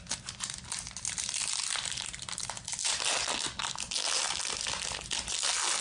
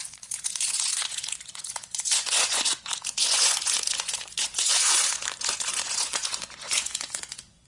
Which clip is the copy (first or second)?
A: second